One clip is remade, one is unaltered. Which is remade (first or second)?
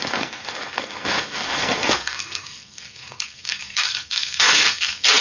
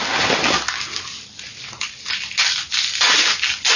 first